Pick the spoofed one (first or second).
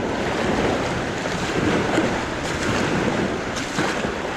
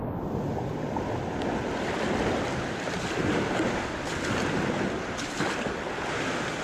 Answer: first